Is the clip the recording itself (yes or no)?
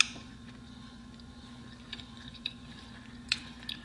no